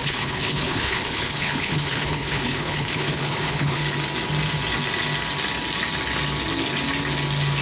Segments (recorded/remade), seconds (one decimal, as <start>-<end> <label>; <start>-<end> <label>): 0.0-3.8 remade; 3.8-7.6 recorded